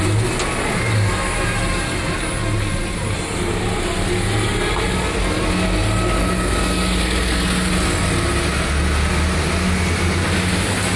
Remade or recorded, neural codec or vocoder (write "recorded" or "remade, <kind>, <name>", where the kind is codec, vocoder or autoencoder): recorded